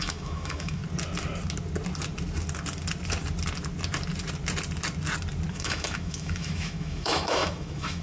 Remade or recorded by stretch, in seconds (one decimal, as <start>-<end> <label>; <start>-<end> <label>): 0.0-0.8 remade; 0.8-5.5 recorded; 5.5-8.0 remade